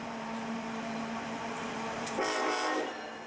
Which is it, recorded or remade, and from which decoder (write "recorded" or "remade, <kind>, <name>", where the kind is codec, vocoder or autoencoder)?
remade, vocoder, BigVGAN v2